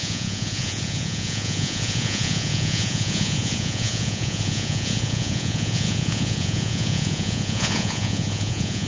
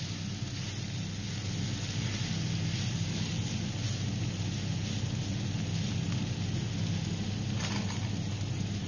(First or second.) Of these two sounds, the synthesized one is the first